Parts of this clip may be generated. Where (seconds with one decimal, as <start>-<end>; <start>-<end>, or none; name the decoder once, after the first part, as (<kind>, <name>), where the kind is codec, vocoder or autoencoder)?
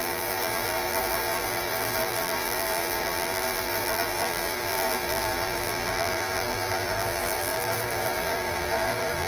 0.0-9.3 (vocoder, BigVGAN v2)